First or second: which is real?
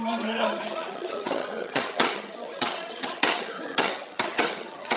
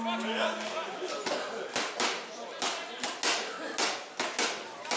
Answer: second